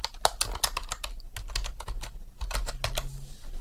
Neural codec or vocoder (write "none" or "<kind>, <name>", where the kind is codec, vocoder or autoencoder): none